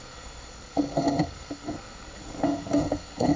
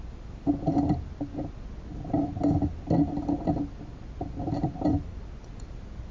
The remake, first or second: first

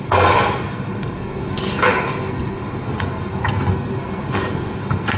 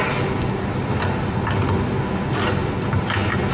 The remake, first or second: first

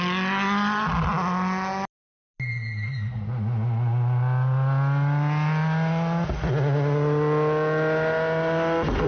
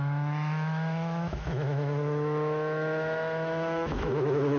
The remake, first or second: second